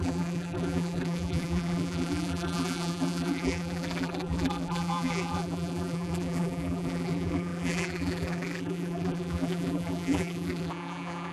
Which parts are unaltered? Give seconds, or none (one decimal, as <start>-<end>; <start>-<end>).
none